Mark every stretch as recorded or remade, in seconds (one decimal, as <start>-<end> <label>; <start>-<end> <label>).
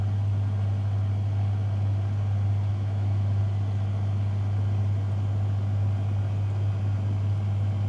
0.0-2.7 recorded; 2.7-3.4 remade; 3.4-7.9 recorded